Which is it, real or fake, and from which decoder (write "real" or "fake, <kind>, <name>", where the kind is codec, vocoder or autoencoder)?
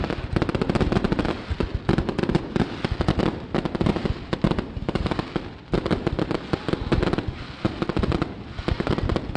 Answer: real